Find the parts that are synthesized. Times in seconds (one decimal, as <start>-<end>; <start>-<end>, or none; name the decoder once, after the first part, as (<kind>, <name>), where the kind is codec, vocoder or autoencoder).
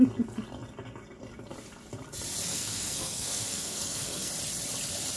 2.5-4.3 (codec, SNAC)